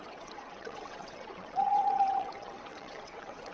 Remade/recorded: remade